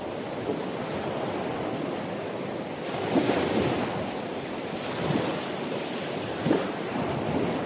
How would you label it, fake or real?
real